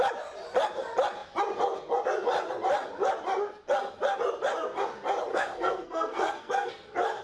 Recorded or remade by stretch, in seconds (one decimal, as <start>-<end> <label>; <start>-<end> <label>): 0.0-5.3 recorded; 5.3-6.7 remade; 6.7-7.2 recorded